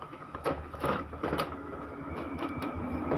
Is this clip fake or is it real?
fake